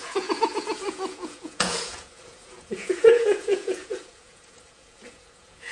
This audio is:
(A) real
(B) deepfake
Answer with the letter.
B